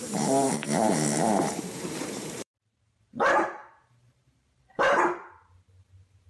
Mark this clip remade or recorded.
remade